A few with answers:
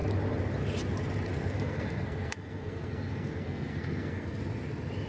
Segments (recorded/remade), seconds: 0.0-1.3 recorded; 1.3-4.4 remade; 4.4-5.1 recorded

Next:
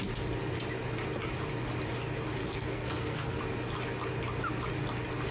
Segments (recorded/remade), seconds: 0.0-2.4 recorded; 2.4-3.4 remade; 3.4-5.3 recorded

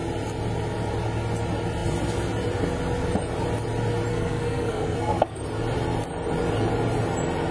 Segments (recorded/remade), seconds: 0.0-4.1 recorded; 4.1-5.4 remade; 5.4-7.5 recorded

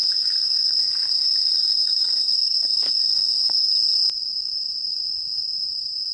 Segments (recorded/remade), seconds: 0.0-3.7 remade; 3.7-6.1 recorded

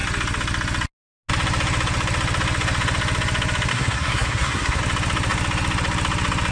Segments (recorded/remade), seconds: 0.0-3.7 recorded; 3.7-4.8 remade; 4.8-6.5 recorded

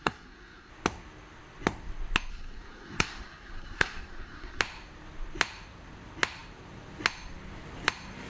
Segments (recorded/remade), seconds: 0.0-0.7 remade; 0.7-2.3 recorded; 2.3-4.6 remade; 4.6-8.3 recorded

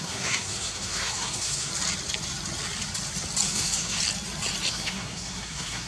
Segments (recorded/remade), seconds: 0.0-1.7 remade; 1.7-3.5 recorded; 3.5-4.0 remade; 4.0-4.7 recorded; 4.7-5.9 remade